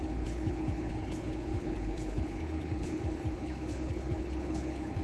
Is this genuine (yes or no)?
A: no